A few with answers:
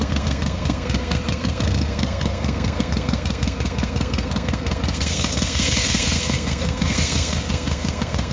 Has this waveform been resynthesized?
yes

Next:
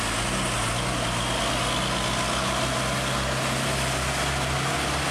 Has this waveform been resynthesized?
no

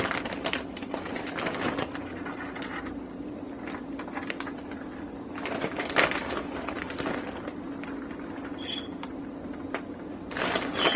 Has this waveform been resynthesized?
no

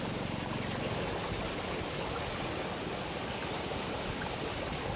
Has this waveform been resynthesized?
no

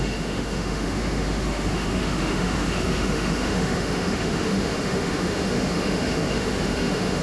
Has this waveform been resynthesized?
yes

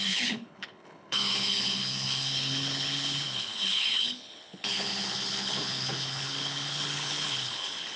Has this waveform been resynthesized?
yes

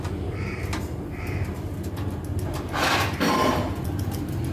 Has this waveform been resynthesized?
no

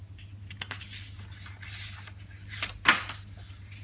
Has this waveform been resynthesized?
no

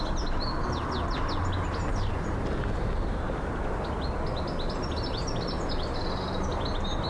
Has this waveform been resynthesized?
no